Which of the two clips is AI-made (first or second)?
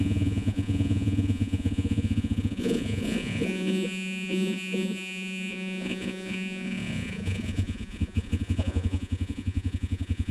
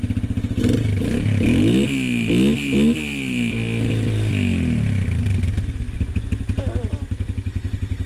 first